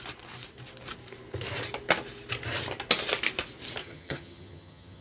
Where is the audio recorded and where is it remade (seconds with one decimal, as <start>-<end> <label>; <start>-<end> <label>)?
0.0-3.8 recorded; 3.8-5.0 remade